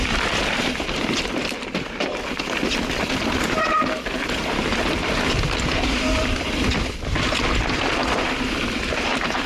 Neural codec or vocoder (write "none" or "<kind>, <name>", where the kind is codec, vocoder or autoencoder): vocoder, BigVGAN v2